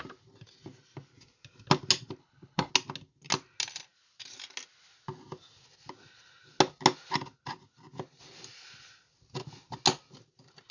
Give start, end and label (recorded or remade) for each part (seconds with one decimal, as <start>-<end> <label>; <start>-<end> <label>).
0.0-2.2 recorded; 2.2-2.7 remade; 2.7-10.7 recorded